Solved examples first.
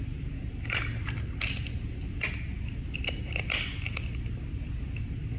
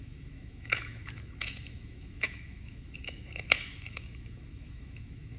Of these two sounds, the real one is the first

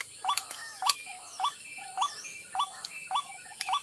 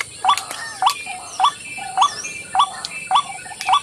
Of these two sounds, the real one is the second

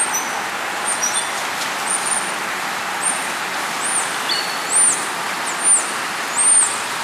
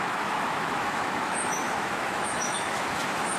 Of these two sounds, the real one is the first